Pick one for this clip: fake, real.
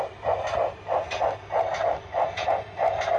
real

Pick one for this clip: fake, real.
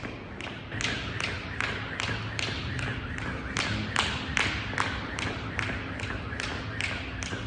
real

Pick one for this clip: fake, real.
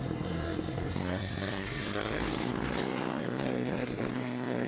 fake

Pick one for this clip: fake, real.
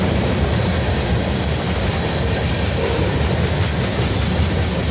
real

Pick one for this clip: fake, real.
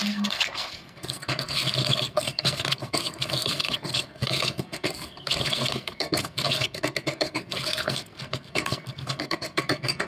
fake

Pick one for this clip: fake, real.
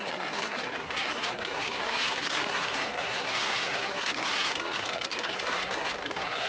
fake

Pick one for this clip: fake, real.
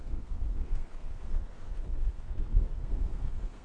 fake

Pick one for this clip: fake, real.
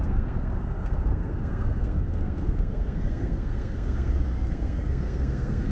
fake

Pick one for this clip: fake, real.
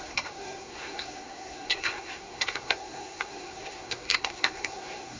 fake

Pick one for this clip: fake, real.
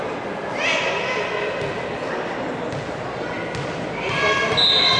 real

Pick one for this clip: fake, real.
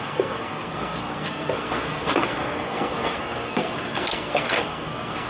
fake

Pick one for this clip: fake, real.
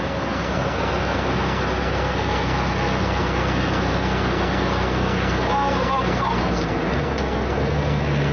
fake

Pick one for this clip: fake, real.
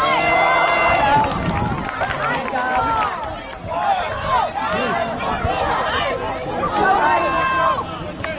real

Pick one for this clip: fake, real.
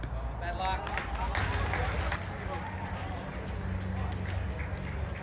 real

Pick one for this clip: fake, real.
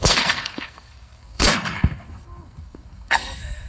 fake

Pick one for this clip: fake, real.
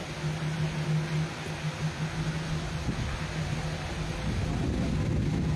real